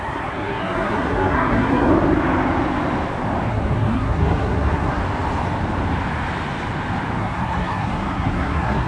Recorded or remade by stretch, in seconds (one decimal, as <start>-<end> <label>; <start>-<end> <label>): 0.0-1.9 remade; 1.9-3.5 recorded; 3.5-5.0 remade; 5.0-7.2 recorded; 7.2-8.9 remade